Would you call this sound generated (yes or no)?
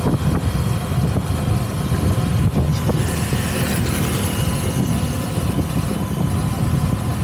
no